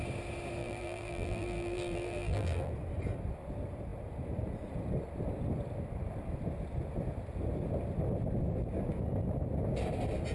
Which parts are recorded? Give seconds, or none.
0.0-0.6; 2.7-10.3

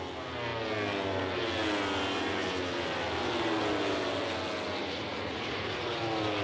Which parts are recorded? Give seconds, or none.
0.0-4.8; 6.0-6.4

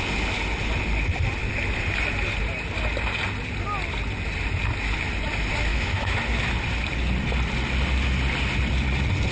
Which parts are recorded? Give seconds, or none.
0.0-5.7; 6.2-9.3

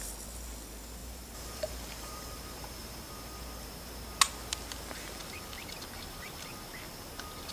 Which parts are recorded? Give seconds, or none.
0.0-1.0; 3.1-7.5

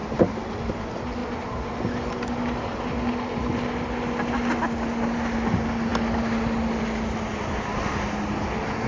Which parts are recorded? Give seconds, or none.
0.0-8.9

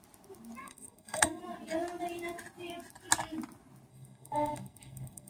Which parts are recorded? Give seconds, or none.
0.0-0.6; 1.4-3.9

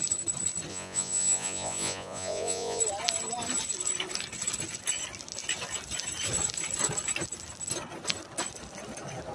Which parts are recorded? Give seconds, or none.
0.0-0.7; 2.8-9.3